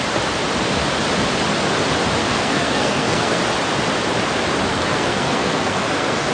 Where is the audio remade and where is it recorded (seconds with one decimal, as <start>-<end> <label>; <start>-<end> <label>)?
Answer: 0.0-2.2 recorded; 2.2-3.4 remade; 3.4-4.7 recorded; 4.7-6.3 remade

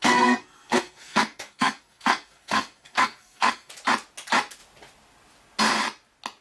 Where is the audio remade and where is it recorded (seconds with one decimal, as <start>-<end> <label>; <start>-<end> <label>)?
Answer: 0.0-3.7 remade; 3.7-6.4 recorded